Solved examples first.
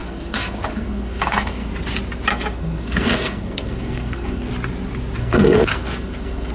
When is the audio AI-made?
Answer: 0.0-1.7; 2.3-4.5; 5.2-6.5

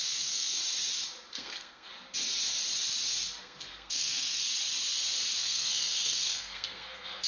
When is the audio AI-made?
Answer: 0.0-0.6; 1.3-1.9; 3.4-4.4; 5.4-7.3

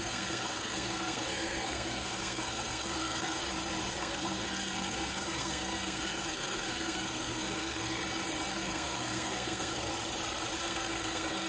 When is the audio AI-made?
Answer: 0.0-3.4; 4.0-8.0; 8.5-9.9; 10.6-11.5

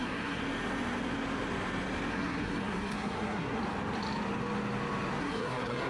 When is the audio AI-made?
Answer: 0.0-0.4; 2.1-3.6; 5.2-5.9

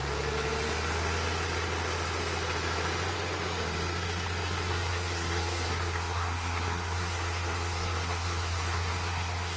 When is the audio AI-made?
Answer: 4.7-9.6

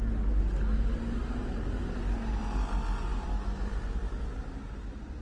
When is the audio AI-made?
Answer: none

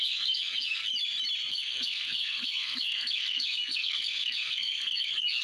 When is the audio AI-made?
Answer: 0.0-0.9; 1.5-5.4

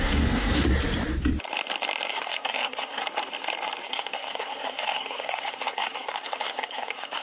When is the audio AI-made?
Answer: 0.0-0.7; 2.1-3.0; 3.9-7.2